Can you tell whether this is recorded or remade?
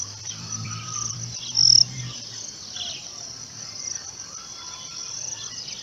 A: remade